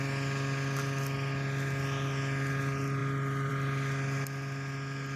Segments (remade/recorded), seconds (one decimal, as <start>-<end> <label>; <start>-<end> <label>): 0.0-5.2 recorded

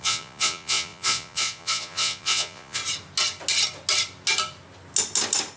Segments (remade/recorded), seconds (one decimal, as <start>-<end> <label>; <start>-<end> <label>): 0.0-2.8 remade; 2.8-5.6 recorded

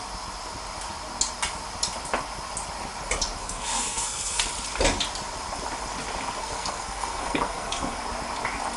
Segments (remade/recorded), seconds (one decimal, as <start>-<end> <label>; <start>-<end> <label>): 0.0-3.4 recorded; 3.4-4.4 remade; 4.4-6.4 recorded; 6.4-8.0 remade; 8.0-8.8 recorded

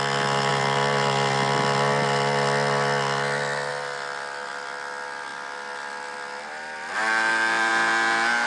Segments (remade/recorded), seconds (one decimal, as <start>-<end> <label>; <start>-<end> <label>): 0.0-5.3 recorded; 5.3-7.7 remade; 7.7-8.5 recorded

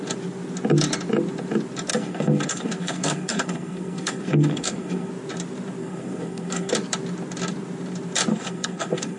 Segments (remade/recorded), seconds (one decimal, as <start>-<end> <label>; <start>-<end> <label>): 0.0-1.9 recorded; 1.9-5.1 remade; 5.1-5.8 recorded; 5.8-6.7 remade; 6.7-8.3 recorded; 8.3-9.2 remade

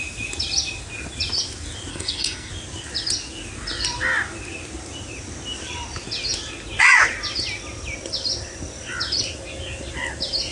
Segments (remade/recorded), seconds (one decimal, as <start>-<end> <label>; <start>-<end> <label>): 0.0-1.9 recorded; 1.9-2.5 remade; 2.5-10.5 recorded

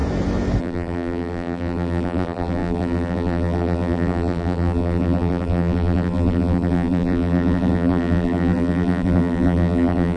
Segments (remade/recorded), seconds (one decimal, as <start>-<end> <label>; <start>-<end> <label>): 0.0-0.6 recorded; 0.6-10.2 remade

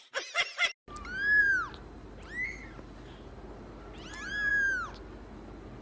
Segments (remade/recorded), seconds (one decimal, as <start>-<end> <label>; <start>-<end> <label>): 0.0-5.8 recorded